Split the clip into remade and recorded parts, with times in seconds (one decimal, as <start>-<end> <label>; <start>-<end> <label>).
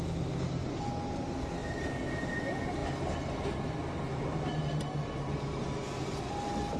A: 0.0-6.8 recorded